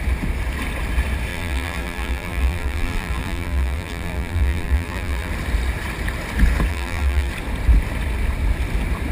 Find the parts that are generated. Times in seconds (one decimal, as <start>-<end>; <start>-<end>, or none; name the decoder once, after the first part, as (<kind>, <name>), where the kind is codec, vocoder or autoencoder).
1.3-5.3 (vocoder, BigVGAN v2); 6.7-7.3